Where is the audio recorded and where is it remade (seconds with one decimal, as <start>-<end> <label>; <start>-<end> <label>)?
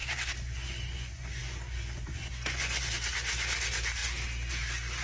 0.0-2.9 remade; 2.9-5.0 recorded